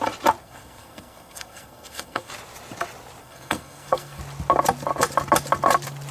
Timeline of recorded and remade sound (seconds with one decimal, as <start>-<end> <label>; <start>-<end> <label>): 0.0-0.4 recorded; 0.4-2.3 remade; 2.3-3.2 recorded; 3.2-4.2 remade; 4.2-6.1 recorded